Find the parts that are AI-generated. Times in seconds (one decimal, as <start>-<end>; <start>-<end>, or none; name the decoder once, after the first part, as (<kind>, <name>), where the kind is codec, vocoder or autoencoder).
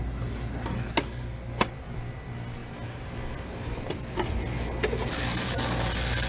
none